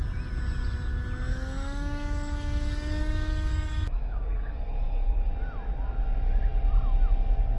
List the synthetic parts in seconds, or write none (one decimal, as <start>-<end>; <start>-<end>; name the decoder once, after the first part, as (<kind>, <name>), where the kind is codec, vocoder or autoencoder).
1.3-5.3 (codec, DAC)